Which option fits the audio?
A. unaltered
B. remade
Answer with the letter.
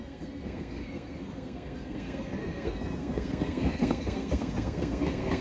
B